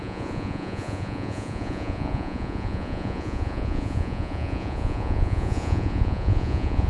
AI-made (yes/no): yes